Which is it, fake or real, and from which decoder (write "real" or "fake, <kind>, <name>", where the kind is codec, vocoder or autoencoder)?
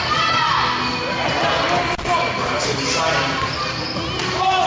real